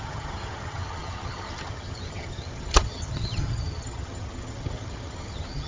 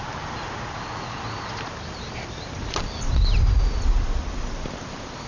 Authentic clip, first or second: second